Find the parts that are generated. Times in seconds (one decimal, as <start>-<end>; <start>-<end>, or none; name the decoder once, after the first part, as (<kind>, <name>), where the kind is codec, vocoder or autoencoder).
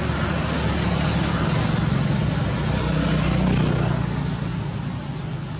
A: none